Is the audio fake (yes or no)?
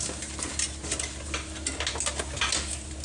no